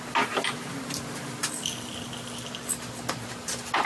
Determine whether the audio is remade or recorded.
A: recorded